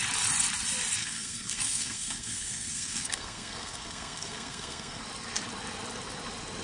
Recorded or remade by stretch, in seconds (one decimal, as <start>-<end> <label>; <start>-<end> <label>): 0.0-1.0 recorded; 1.0-5.0 remade; 5.0-6.6 recorded

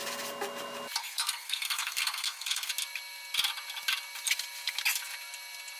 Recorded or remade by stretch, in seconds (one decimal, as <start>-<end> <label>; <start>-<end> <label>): 0.0-1.0 recorded; 1.0-2.7 remade; 2.7-5.8 recorded

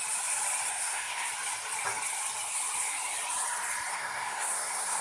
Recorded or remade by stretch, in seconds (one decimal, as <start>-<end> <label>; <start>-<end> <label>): 0.0-0.7 recorded; 0.7-1.3 remade; 1.3-3.9 recorded; 3.9-5.0 remade

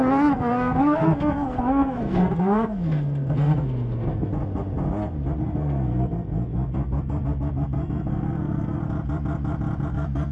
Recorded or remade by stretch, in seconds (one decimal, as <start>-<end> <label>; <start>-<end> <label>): 0.0-4.3 remade; 4.3-5.4 recorded; 5.4-8.8 remade; 8.8-9.9 recorded; 9.9-10.3 remade

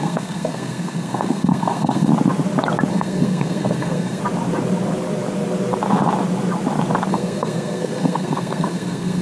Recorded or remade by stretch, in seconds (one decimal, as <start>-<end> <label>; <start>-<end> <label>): 0.0-2.1 remade; 2.1-2.9 recorded; 2.9-4.2 remade; 4.2-7.1 recorded; 7.1-9.2 remade